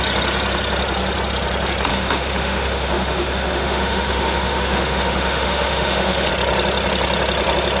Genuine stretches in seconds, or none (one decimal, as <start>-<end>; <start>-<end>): 0.0-1.9; 6.3-7.8